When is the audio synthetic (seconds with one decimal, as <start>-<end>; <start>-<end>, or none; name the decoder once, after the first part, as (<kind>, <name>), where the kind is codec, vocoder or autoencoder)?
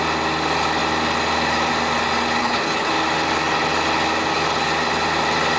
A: 2.4-2.9 (codec, HILCodec)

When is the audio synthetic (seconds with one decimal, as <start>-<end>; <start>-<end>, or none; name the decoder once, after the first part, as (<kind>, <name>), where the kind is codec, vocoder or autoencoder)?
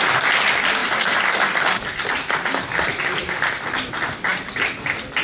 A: none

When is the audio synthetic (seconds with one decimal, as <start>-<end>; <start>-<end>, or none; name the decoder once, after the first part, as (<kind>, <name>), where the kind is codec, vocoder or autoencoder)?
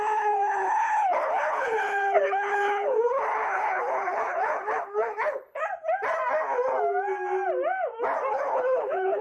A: 0.0-5.6 (codec, HILCodec); 8.3-9.2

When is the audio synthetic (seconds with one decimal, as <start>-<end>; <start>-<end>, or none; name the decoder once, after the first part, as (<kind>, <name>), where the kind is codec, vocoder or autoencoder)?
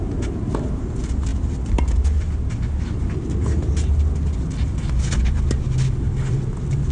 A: none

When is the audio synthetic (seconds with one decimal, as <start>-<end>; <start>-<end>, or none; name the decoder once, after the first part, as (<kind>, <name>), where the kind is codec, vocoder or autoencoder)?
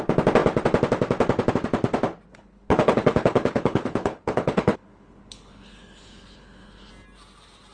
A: 2.3-6.9 (codec, HILCodec)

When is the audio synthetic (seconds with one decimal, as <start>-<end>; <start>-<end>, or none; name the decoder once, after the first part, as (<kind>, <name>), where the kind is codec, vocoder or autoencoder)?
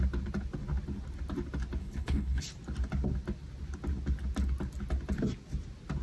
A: 1.8-2.4 (codec, HILCodec)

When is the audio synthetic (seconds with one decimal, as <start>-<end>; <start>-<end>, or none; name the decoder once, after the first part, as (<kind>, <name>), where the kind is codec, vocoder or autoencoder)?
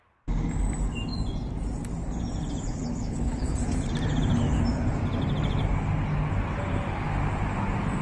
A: 2.7-3.9 (codec, HILCodec)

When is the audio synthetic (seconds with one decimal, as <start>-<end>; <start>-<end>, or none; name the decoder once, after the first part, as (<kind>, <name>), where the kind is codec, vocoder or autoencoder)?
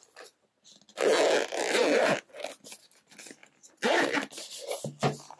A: none